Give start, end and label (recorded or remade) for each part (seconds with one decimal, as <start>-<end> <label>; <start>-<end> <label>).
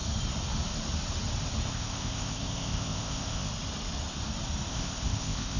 0.0-1.7 recorded; 1.7-3.5 remade; 3.5-4.7 recorded; 4.7-5.6 remade